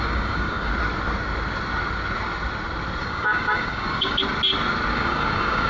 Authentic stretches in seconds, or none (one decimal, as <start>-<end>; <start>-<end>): 0.7-3.0; 4.2-4.9